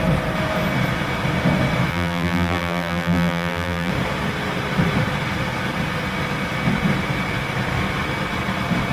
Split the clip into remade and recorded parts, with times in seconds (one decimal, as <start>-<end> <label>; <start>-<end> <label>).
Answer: 0.0-1.9 recorded; 1.9-3.9 remade; 3.9-8.9 recorded